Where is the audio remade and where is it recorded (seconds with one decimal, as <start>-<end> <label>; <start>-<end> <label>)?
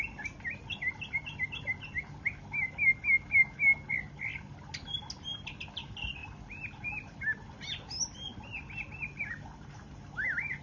0.0-10.6 recorded